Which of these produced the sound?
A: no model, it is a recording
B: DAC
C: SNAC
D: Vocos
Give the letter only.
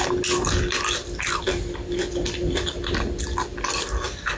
A